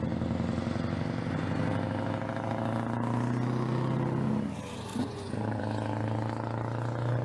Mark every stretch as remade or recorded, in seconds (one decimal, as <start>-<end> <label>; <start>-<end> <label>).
0.0-4.9 recorded; 4.9-5.6 remade; 5.6-7.2 recorded